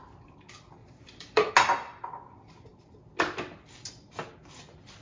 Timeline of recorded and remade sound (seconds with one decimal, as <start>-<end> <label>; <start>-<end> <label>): 0.0-0.8 recorded; 0.8-1.5 remade; 1.5-5.0 recorded